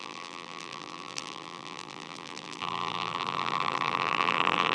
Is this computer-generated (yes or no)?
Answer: yes